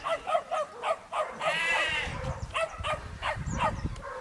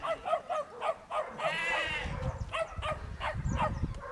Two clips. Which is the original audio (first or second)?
second